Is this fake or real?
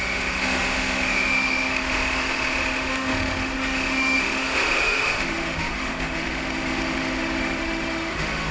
fake